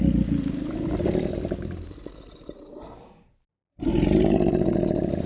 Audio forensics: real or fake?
real